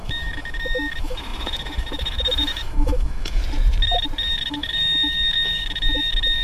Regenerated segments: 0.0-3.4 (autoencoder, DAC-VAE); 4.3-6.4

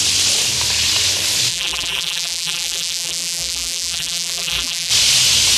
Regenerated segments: 1.5-4.9 (vocoder, BigVGAN v2)

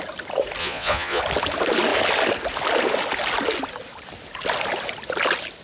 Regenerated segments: 0.6-1.2 (vocoder, Vocos)

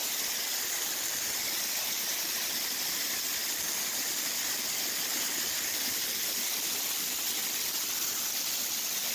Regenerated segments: 0.0-0.6 (vocoder, BigVGAN v2)

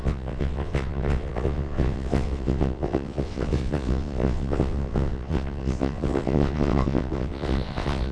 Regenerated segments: 0.0-8.1 (vocoder, WaveNeXt)

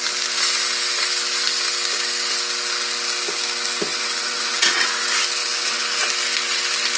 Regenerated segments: 3.9-5.0 (vocoder, WaveNeXt); 5.4-6.0

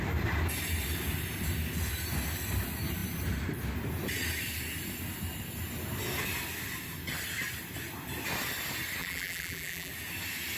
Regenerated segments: 9.0-9.9 (vocoder, BigVGAN v2)

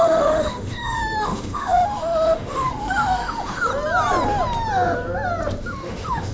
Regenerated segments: 0.0-3.7 (autoencoder, DAC-VAE); 5.6-6.3